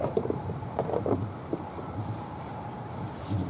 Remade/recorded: recorded